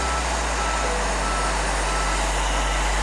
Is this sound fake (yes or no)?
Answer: no